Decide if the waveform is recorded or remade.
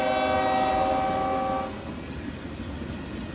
recorded